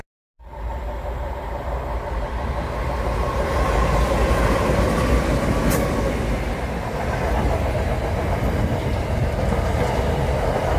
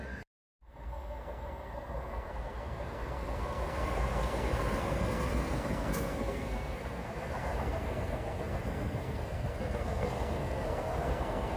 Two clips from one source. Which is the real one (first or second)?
first